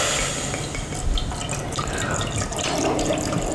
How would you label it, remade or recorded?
recorded